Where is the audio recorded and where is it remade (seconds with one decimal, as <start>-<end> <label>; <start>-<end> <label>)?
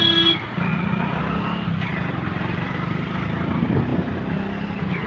0.0-0.7 recorded; 0.7-1.2 remade; 1.2-5.1 recorded